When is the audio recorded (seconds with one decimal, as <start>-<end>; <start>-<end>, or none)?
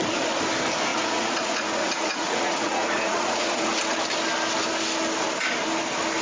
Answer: 0.0-0.9; 3.8-6.2